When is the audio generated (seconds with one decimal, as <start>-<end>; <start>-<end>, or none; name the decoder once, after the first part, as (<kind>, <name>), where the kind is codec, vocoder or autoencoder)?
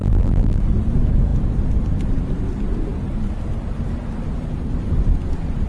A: 0.0-0.6 (vocoder, BigVGAN v2)